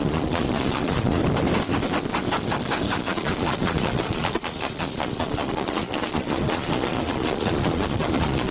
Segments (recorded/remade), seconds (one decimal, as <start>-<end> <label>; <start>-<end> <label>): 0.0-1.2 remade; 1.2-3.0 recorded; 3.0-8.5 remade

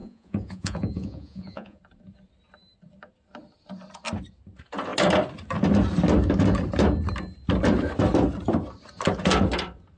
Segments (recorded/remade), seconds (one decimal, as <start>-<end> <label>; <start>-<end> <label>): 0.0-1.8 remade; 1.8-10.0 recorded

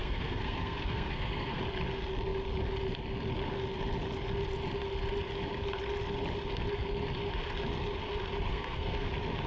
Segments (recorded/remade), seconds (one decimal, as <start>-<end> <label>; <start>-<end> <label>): 0.0-1.6 remade; 1.6-8.5 recorded; 8.5-9.1 remade; 9.1-9.5 recorded

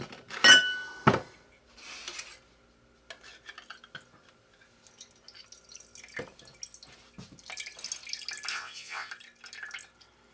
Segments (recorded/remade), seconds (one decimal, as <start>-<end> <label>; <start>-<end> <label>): 0.0-8.5 recorded; 8.5-9.1 remade; 9.1-10.3 recorded